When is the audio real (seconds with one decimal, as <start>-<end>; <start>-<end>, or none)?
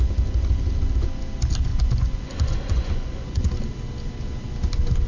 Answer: 0.0-1.7; 3.5-5.1